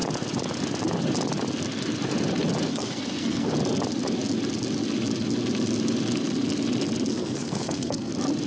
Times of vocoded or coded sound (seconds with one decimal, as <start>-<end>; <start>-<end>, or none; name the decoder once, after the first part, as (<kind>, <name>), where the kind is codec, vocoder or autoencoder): 2.7-3.5 (codec, SNAC); 7.1-8.1